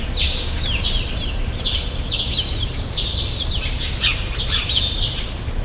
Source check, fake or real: fake